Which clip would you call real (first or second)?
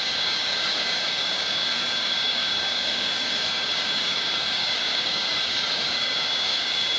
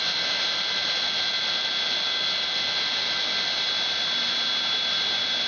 second